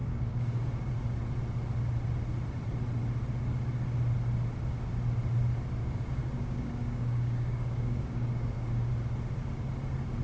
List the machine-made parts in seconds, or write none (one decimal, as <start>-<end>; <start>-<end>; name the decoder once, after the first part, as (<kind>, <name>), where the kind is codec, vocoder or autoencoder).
0.0-0.9 (codec, DAC); 5.8-8.9